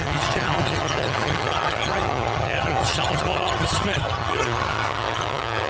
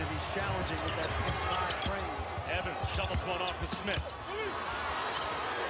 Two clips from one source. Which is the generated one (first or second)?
first